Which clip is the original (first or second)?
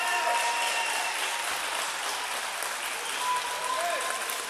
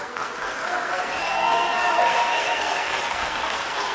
first